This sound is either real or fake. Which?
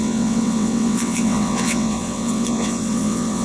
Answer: fake